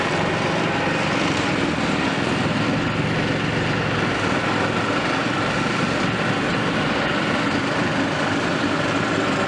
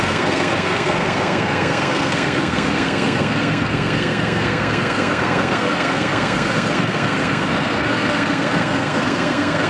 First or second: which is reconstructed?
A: second